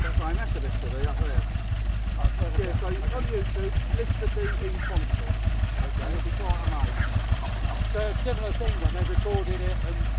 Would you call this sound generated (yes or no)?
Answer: no